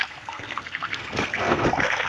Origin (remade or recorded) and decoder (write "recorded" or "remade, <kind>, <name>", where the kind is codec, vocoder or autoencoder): remade, codec, SNAC